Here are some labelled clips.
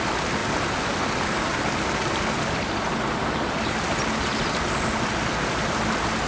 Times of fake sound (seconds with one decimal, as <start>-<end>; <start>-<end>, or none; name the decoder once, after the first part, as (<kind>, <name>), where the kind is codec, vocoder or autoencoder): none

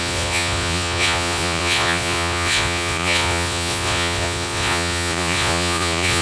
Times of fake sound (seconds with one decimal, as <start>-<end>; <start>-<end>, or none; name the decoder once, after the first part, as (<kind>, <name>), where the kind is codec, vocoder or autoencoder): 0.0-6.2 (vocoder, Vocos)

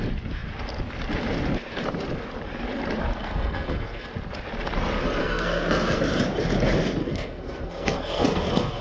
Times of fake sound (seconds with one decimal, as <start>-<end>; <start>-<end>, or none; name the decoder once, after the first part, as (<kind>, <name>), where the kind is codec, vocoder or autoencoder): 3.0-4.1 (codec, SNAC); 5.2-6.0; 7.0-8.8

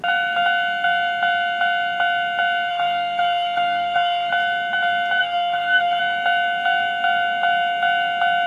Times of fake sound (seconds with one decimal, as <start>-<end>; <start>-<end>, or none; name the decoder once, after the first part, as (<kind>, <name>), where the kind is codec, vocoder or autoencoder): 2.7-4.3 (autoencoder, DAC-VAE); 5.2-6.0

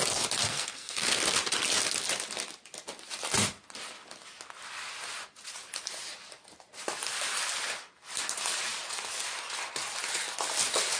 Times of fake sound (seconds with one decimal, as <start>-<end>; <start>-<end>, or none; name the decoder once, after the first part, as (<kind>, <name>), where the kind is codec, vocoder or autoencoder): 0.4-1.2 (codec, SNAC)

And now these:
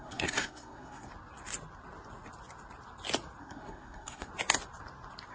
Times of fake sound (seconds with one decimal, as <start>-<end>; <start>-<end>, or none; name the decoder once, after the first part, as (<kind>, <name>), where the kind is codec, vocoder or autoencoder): 0.0-1.1 (codec, SNAC); 3.4-4.3